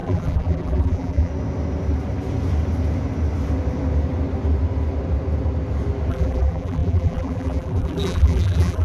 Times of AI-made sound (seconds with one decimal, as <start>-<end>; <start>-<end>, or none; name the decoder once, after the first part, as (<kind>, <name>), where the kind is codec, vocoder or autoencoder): 0.0-1.3 (vocoder, BigVGAN v2); 6.1-8.8